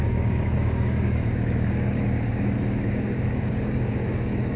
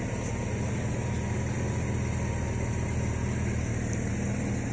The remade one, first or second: first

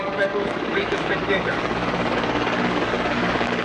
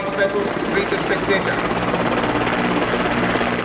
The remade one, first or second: first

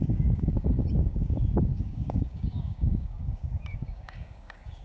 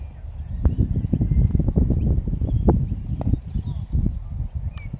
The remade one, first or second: first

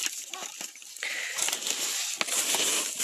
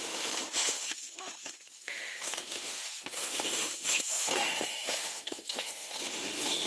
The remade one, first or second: second